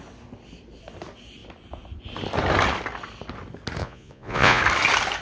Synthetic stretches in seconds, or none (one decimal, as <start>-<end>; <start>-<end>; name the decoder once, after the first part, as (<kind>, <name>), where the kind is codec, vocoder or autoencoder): 3.8-4.6 (vocoder, Vocos)